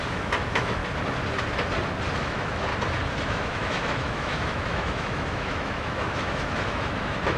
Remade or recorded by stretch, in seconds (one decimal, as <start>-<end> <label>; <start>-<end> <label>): 0.0-0.8 remade; 0.8-2.1 recorded; 2.1-2.7 remade; 2.7-3.2 recorded; 3.2-7.4 remade